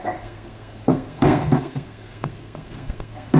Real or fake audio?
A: fake